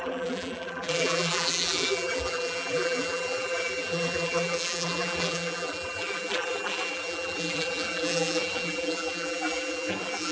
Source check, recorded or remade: remade